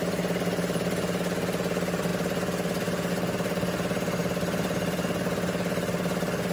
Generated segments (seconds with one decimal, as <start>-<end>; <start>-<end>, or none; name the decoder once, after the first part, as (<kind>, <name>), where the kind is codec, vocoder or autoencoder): none